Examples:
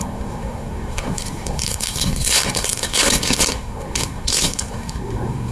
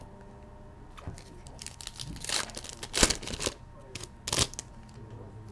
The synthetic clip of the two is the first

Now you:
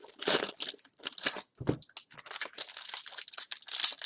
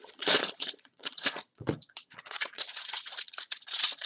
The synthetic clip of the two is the second